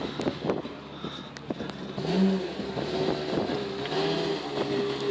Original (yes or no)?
yes